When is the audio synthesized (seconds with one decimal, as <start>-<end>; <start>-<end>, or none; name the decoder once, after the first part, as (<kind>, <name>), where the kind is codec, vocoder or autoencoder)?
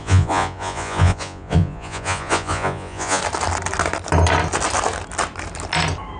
0.0-3.2 (vocoder, Vocos)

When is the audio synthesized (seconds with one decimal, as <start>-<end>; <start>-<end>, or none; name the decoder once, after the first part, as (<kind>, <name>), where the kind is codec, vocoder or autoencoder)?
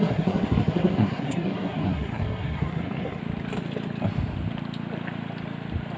0.0-3.2 (codec, SNAC)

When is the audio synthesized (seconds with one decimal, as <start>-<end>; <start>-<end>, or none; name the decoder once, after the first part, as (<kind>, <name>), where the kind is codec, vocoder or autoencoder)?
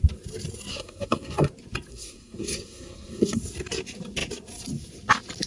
0.7-1.5 (codec, SNAC); 1.9-3.4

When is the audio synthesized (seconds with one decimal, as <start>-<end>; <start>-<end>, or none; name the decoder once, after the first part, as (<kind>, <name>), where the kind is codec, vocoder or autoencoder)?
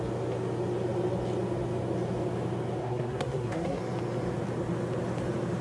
2.8-3.8 (codec, SNAC)